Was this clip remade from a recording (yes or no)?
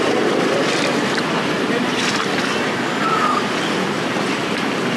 yes